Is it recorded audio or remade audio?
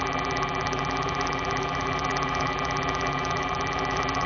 remade